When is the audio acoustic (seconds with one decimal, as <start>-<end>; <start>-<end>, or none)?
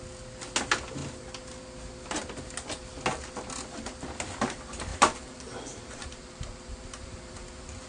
0.0-4.9